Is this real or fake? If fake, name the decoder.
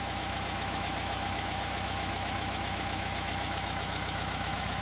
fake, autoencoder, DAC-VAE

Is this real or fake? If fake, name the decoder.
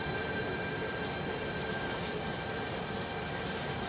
real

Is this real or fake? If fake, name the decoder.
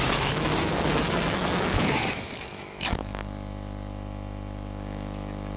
fake, autoencoder, DAC-VAE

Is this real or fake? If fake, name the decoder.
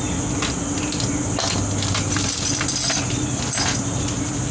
real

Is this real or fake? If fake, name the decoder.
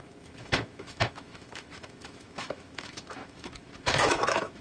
fake, autoencoder, DAC-VAE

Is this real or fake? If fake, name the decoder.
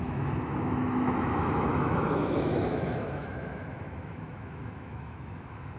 fake, autoencoder, DAC-VAE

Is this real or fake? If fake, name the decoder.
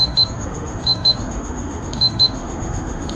fake, autoencoder, DAC-VAE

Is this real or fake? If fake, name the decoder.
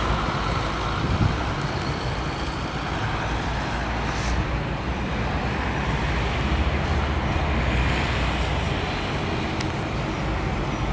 real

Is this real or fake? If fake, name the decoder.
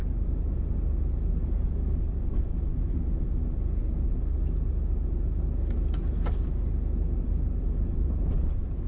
real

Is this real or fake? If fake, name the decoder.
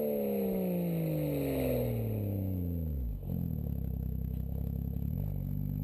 real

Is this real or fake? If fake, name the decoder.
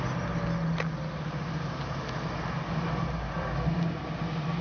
real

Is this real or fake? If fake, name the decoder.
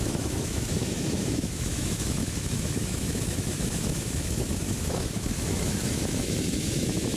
fake, autoencoder, DAC-VAE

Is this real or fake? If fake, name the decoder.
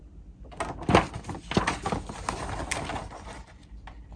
real